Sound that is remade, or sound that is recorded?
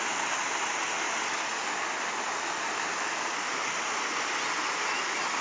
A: recorded